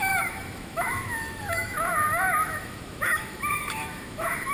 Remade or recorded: remade